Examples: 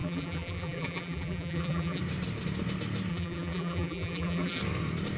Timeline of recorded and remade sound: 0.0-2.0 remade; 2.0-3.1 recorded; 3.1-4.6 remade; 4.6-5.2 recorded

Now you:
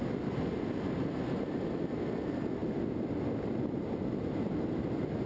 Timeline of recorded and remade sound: 0.0-5.3 recorded

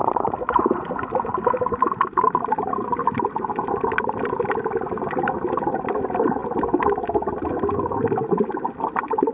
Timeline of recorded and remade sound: 0.0-9.3 recorded

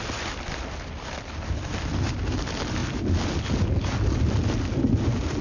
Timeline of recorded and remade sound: 0.0-5.4 recorded

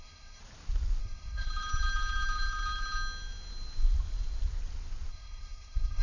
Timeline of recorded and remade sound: 0.0-0.4 remade; 0.4-1.0 recorded; 1.0-1.5 remade; 1.5-5.1 recorded; 5.1-6.0 remade